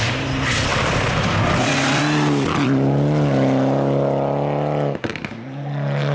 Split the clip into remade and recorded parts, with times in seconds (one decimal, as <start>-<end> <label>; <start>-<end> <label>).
0.0-0.7 recorded; 0.7-2.0 remade; 2.0-6.1 recorded